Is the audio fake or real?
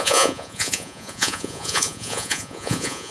fake